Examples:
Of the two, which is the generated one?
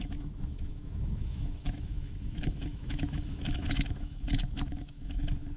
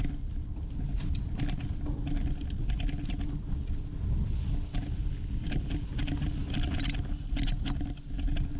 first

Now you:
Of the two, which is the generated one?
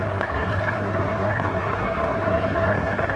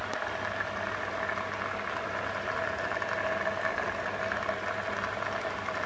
first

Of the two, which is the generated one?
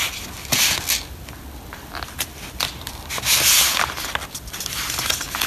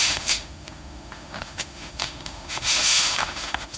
second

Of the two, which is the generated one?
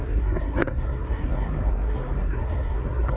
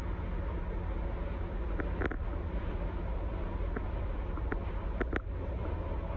first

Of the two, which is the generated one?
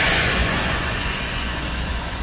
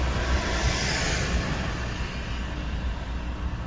first